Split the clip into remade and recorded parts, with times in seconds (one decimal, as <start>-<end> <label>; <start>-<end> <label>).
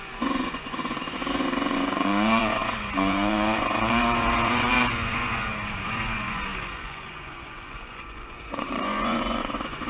0.0-9.9 remade